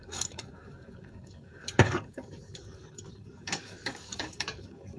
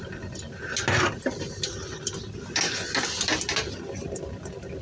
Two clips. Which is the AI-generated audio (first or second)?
first